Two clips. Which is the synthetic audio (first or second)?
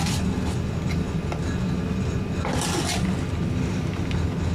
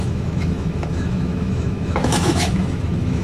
second